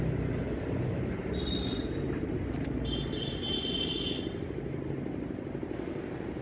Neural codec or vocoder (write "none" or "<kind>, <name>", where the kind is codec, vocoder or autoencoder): none